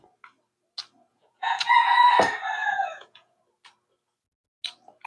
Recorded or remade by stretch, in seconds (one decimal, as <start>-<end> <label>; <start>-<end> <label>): 0.0-1.1 recorded; 1.1-2.1 remade; 2.1-2.6 recorded; 2.6-3.4 remade; 3.4-5.1 recorded